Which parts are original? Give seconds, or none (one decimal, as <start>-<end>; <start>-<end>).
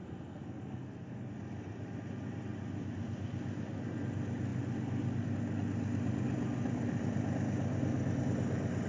1.3-8.9